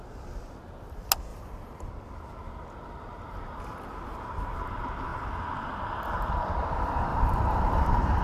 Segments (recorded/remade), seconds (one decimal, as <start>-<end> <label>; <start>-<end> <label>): 0.0-1.3 recorded; 1.3-1.9 remade; 1.9-7.1 recorded; 7.1-8.2 remade